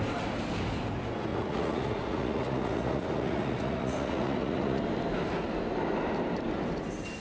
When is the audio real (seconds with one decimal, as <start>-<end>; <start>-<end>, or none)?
0.0-1.3; 4.8-7.2